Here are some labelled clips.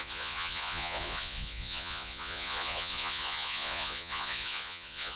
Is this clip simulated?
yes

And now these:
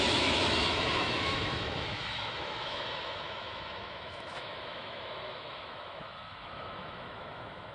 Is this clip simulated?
yes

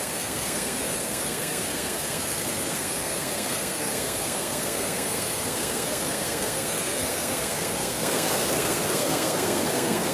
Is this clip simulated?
yes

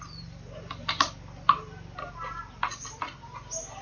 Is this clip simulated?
no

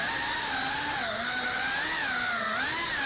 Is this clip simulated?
no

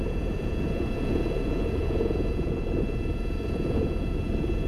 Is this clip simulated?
yes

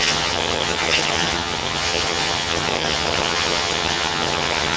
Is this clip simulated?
yes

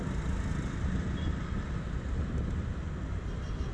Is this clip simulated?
no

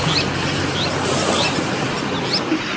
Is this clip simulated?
no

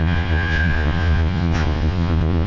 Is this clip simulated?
yes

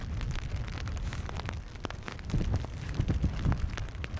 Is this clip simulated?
no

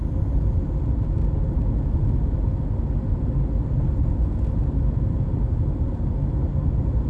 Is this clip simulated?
no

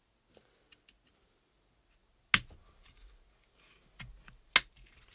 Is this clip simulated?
no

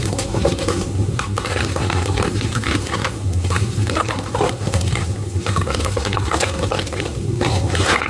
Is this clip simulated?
yes